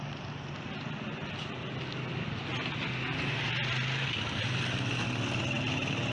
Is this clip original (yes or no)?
yes